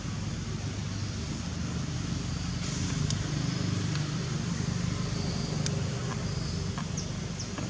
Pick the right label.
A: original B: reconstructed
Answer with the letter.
A